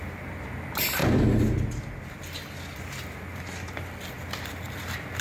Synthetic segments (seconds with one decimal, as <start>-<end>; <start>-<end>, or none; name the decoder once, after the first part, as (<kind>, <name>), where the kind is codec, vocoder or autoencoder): none